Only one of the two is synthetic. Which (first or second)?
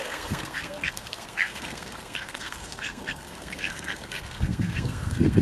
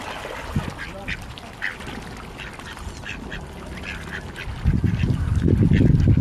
first